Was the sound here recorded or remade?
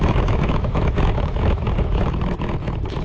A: remade